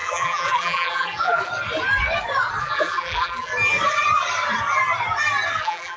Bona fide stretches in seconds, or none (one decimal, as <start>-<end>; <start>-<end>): 1.5-2.6; 3.5-5.6